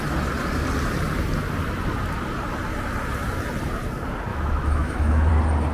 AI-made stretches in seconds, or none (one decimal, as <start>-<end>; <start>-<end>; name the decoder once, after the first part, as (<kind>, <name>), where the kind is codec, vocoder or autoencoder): 4.3-5.3 (autoencoder, DAC-VAE)